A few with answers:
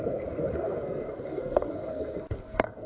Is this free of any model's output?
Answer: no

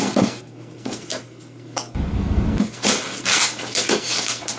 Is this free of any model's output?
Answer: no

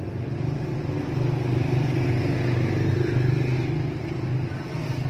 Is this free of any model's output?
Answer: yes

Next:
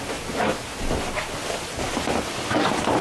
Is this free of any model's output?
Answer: yes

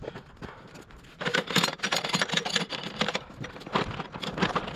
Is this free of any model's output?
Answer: yes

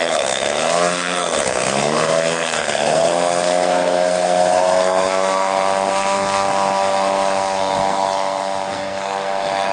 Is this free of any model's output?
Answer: no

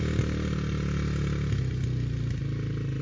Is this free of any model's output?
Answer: yes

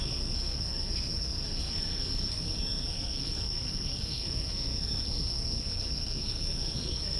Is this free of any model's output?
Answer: no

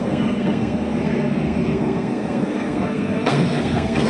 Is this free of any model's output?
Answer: no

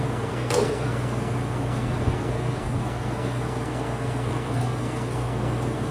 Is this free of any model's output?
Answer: no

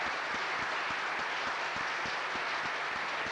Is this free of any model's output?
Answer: yes